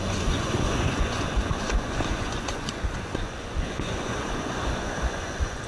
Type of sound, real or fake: fake